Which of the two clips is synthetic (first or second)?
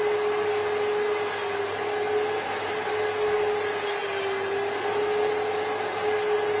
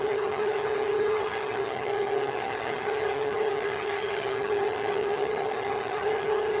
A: second